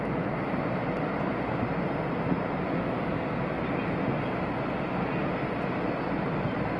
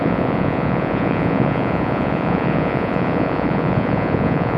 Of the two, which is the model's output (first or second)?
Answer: second